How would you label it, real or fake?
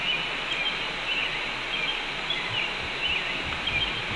real